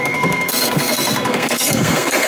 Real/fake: fake